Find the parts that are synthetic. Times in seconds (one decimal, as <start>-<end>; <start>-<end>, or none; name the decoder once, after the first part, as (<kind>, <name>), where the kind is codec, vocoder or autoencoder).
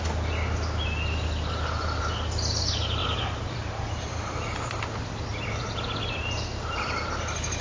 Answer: 3.0-4.8 (vocoder, BigVGAN v2); 5.3-7.1